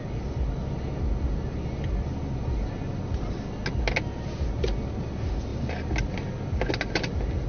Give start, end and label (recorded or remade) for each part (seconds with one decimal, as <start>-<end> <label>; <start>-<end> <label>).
0.0-7.5 recorded